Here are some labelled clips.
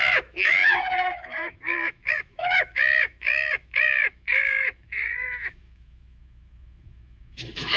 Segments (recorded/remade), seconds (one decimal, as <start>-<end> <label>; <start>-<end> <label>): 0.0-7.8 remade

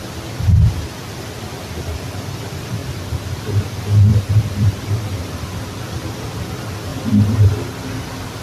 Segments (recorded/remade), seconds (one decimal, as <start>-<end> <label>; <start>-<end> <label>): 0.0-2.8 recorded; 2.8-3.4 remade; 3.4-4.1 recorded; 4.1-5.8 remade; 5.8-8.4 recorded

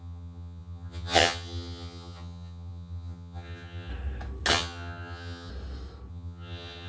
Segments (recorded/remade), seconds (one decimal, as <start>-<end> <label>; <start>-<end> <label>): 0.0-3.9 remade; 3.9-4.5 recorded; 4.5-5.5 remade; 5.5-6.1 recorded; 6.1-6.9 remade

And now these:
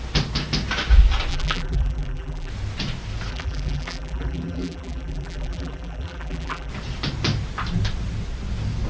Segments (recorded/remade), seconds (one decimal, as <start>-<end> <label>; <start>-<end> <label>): 0.0-1.3 recorded; 1.3-2.5 remade; 2.5-3.3 recorded; 3.3-6.7 remade; 6.7-8.9 recorded

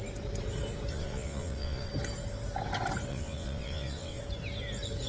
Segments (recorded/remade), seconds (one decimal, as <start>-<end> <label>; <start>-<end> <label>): 0.0-0.9 recorded; 0.9-1.9 remade; 1.9-3.1 recorded; 3.1-4.2 remade; 4.2-5.1 recorded